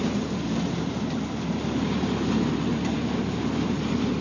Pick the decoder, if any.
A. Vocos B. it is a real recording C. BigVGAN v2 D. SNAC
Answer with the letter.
B